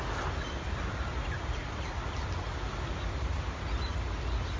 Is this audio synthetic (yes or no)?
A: no